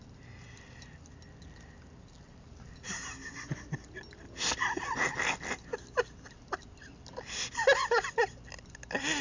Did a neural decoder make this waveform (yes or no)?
no